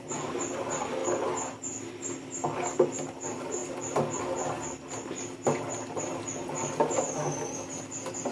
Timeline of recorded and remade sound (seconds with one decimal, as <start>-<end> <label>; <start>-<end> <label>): 0.0-7.2 recorded; 7.2-8.3 remade